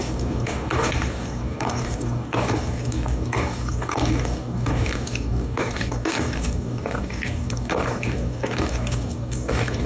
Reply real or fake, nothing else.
fake